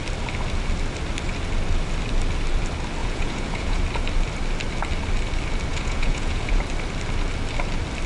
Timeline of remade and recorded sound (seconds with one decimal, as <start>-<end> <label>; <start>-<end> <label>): 0.0-3.0 recorded; 3.0-3.8 remade; 3.8-5.7 recorded; 5.7-6.6 remade; 6.6-8.1 recorded